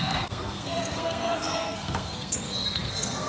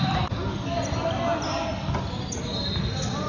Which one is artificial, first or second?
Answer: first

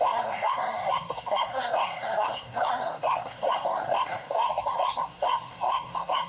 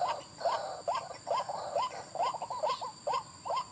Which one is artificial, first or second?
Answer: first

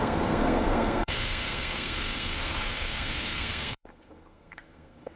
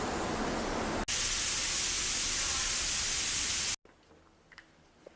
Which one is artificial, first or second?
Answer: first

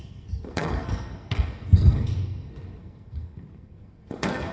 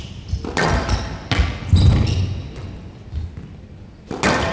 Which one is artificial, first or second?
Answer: first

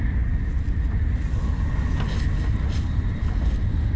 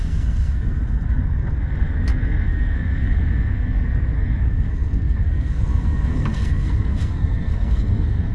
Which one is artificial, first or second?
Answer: second